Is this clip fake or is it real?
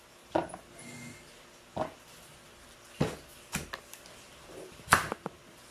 real